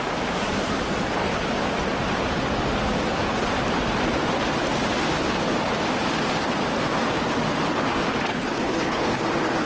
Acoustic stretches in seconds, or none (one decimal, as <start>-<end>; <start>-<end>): 0.0-8.3; 9.2-9.7